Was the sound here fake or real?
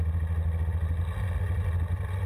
real